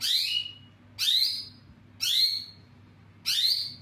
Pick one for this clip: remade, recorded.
recorded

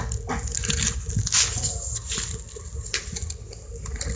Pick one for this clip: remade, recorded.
recorded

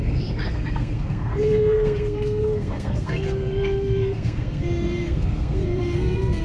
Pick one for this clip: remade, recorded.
remade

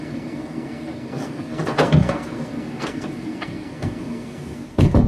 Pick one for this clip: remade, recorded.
remade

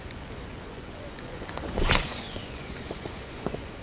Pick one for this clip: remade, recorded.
remade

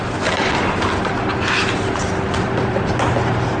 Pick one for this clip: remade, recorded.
recorded